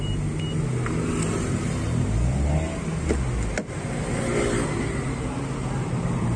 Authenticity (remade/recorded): recorded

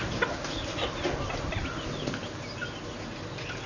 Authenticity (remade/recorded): recorded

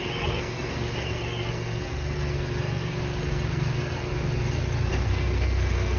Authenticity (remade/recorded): remade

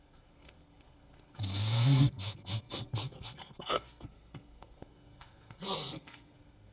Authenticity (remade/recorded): remade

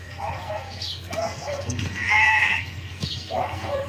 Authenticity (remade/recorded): remade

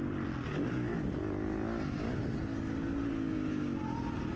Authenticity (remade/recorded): recorded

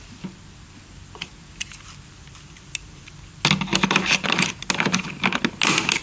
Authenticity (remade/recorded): recorded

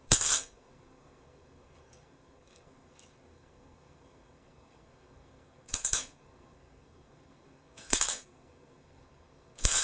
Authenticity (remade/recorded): remade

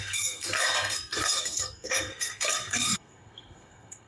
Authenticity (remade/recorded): remade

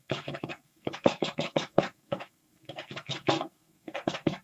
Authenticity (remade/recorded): remade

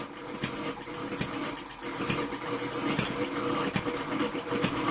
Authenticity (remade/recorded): recorded